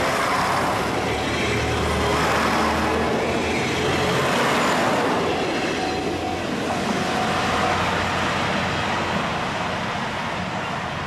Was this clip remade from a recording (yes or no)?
no